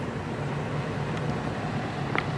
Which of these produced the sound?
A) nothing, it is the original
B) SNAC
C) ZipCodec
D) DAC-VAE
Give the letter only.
A